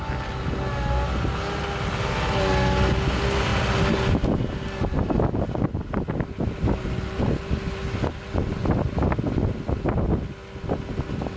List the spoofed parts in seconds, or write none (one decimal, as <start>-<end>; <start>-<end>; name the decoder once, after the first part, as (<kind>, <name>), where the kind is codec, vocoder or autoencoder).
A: none